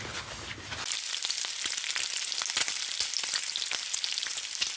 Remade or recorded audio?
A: recorded